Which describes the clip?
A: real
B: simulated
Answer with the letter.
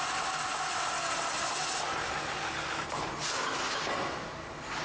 A